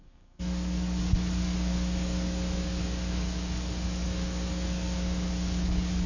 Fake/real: fake